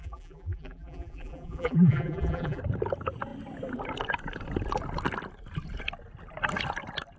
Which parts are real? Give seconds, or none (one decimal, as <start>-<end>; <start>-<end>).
2.6-7.2